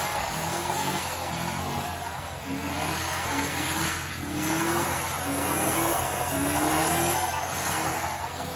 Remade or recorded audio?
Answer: remade